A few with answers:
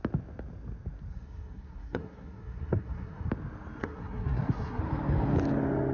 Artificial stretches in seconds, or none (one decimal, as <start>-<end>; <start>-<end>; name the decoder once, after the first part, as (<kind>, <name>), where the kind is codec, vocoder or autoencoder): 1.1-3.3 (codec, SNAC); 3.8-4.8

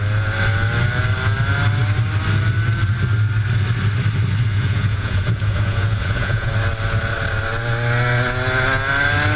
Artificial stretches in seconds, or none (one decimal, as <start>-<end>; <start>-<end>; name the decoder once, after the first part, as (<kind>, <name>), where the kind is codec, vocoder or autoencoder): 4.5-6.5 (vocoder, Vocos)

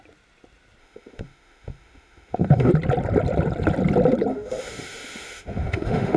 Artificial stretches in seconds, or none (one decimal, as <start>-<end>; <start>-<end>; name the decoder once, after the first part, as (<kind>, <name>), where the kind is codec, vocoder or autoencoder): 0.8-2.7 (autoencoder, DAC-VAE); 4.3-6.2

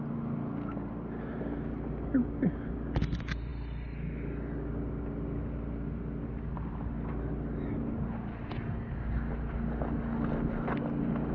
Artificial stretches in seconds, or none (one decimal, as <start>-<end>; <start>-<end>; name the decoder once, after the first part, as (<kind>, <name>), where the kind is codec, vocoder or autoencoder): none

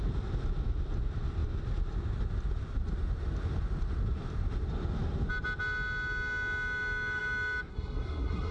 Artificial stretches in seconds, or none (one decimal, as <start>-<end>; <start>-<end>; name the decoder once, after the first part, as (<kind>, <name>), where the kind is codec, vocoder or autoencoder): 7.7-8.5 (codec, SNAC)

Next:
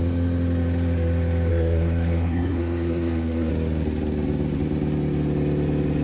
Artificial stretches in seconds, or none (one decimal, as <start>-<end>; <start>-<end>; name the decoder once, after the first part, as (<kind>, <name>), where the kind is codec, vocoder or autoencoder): 1.5-3.5 (codec, SNAC)